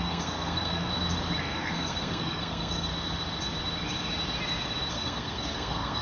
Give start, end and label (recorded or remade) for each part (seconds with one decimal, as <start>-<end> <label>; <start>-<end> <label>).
0.0-0.9 remade; 0.9-1.4 recorded; 1.4-2.9 remade; 2.9-4.9 recorded; 4.9-6.0 remade